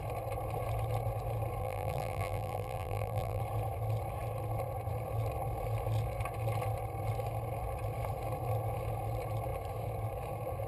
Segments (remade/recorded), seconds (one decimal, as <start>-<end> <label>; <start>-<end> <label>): 0.0-1.6 recorded; 1.6-3.4 remade; 3.4-10.7 recorded